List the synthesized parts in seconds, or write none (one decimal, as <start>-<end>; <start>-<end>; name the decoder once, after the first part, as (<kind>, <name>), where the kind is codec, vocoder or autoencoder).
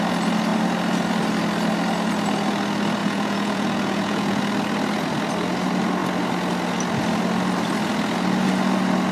3.0-4.4 (vocoder, Vocos)